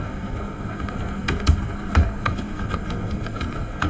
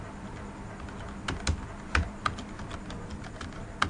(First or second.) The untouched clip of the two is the second